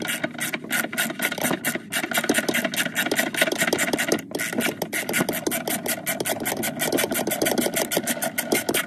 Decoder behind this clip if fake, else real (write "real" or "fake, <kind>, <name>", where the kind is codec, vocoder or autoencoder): real